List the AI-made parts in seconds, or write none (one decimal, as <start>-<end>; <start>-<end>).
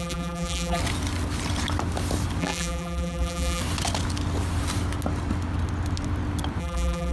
0.0-0.8; 2.4-3.6; 6.6-7.1